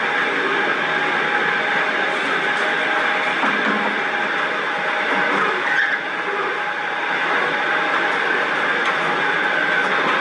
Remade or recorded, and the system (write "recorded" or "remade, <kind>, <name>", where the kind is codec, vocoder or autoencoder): recorded